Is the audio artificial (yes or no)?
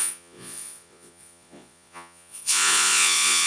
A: yes